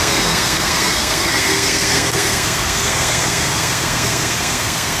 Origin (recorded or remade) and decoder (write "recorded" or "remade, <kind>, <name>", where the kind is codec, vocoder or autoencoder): remade, codec, SNAC